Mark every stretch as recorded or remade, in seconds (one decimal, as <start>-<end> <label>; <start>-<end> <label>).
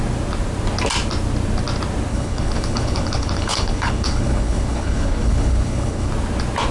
0.0-2.1 recorded; 2.1-6.1 remade; 6.1-6.7 recorded